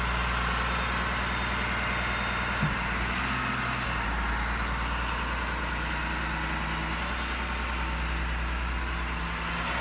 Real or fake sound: real